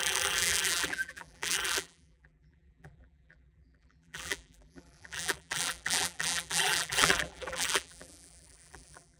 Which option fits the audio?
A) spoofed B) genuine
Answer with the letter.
A